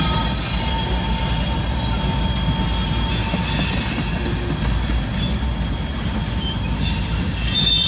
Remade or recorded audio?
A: recorded